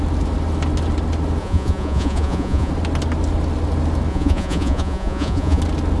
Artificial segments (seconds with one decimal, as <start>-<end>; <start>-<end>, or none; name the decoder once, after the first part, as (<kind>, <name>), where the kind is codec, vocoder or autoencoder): 1.4-2.7 (vocoder, Vocos); 4.1-5.6